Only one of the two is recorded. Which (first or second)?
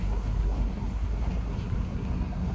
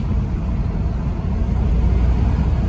second